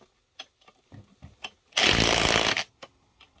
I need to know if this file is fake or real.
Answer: real